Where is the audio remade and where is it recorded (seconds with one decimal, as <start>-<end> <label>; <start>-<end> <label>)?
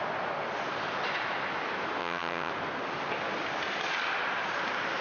0.0-2.0 recorded; 2.0-2.5 remade; 2.5-5.0 recorded